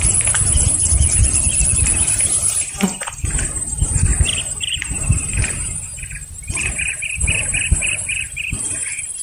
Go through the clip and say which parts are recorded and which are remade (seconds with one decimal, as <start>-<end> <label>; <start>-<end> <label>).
0.0-1.2 remade; 1.2-1.9 recorded; 1.9-4.1 remade; 4.1-5.4 recorded; 5.4-9.2 remade